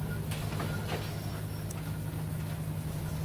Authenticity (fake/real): real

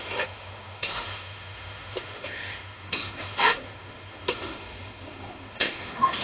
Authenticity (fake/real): fake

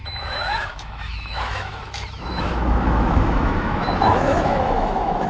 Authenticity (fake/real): fake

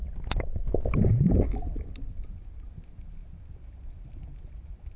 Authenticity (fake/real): real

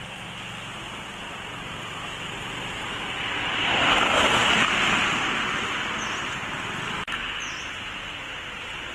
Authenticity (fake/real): real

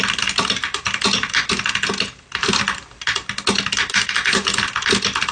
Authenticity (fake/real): real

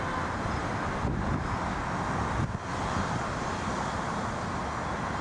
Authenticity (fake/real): real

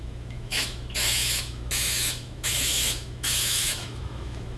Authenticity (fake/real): fake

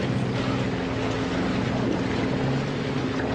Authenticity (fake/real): real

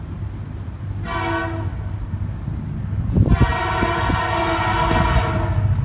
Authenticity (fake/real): real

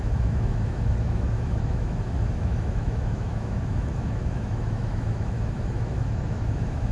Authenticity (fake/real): fake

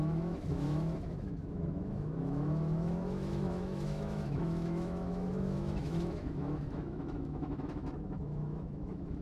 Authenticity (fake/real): fake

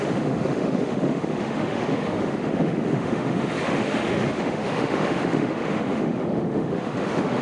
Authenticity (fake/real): fake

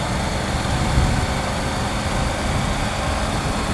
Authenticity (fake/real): real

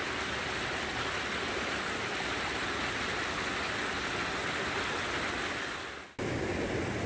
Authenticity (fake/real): real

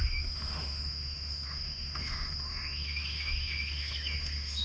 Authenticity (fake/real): fake